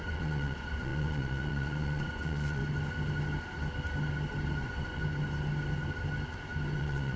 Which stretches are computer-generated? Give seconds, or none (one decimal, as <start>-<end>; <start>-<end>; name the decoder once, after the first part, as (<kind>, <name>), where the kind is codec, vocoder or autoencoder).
0.0-2.6 (vocoder, Vocos); 4.6-5.0; 6.8-7.2